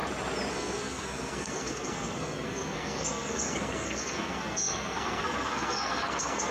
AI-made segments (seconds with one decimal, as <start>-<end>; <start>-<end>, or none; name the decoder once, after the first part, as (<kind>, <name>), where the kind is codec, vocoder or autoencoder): 0.5-6.5 (codec, SNAC)